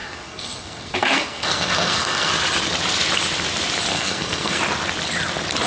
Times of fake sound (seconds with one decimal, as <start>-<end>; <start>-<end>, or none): 0.0-2.3; 3.9-4.6